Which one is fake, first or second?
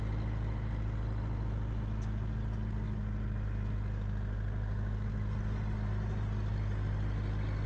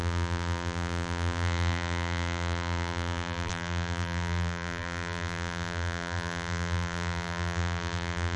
second